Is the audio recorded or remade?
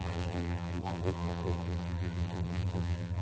remade